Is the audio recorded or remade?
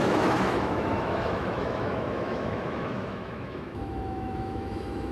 remade